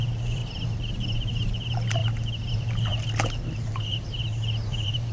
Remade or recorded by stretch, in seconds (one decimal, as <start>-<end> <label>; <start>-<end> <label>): 0.0-0.4 remade; 0.4-0.9 recorded; 0.9-2.0 remade; 2.0-2.5 recorded; 2.5-2.9 remade; 2.9-3.8 recorded; 3.8-5.1 remade